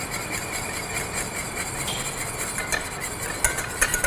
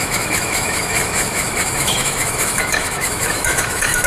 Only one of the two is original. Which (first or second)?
first